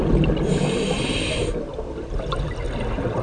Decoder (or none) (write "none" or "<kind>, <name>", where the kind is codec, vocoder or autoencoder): none